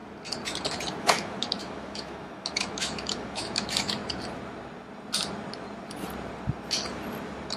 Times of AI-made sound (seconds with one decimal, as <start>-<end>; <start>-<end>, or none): 1.0-4.0